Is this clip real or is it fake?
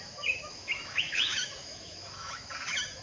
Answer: fake